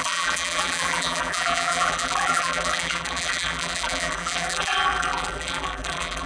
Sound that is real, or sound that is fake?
fake